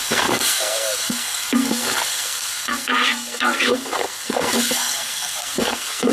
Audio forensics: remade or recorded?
remade